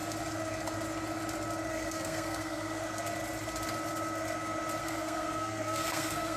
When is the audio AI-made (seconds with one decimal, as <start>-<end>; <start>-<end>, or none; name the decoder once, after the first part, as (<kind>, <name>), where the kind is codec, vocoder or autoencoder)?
1.7-2.8 (codec, SNAC); 4.8-6.4